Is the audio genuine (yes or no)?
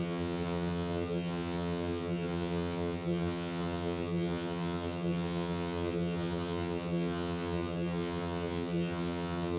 no